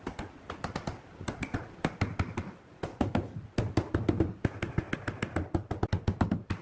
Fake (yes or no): no